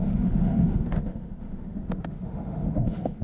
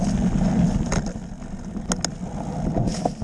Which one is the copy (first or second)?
first